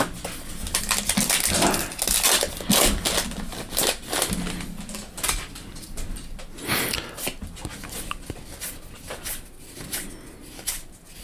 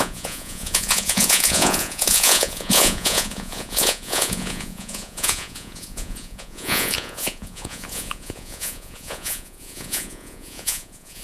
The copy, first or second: second